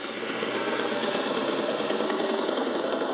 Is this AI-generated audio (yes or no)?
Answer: yes